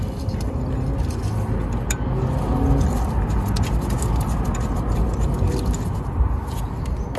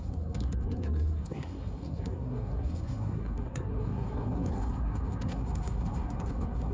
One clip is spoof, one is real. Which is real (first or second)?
first